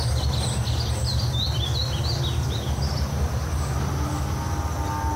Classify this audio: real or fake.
real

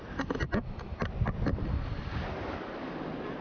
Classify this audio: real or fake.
real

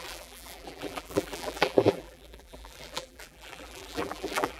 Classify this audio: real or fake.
fake